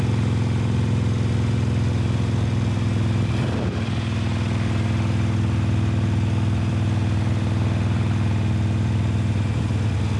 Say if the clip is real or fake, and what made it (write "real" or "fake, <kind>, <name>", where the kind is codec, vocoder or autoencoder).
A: real